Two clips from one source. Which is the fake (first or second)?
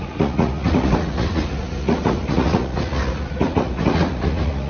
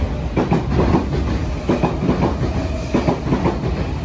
first